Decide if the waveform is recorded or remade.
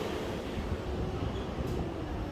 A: recorded